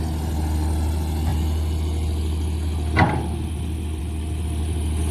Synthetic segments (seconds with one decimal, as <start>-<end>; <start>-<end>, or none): none